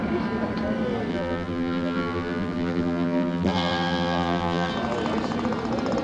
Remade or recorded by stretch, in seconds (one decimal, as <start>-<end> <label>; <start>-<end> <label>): 0.0-1.1 recorded; 1.1-4.7 remade; 4.7-6.0 recorded